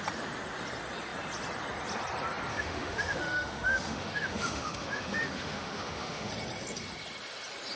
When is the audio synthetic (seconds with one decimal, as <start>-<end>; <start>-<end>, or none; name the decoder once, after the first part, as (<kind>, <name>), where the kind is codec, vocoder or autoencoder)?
2.5-6.3 (autoencoder, DAC-VAE)

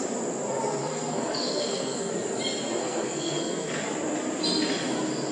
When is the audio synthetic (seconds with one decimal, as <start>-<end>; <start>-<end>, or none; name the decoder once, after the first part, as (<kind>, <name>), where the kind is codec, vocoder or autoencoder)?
0.8-2.1 (codec, SNAC); 2.8-3.7